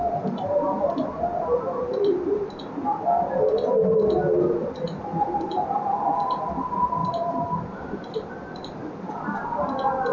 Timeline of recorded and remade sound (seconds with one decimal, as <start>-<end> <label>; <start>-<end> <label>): 0.0-1.8 recorded; 1.8-2.6 remade; 2.6-7.0 recorded; 7.0-8.3 remade; 8.3-10.1 recorded